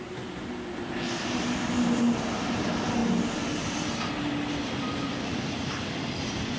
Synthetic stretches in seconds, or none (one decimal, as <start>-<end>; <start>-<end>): none